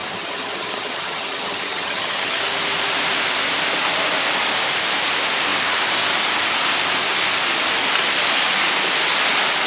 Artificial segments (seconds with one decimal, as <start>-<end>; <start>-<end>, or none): 0.0-2.4